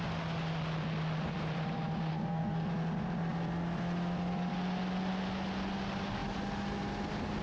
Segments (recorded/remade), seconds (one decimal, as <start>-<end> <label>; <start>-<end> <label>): 0.0-2.1 recorded; 2.1-2.7 remade; 2.7-7.4 recorded